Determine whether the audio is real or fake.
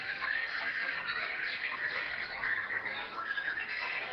fake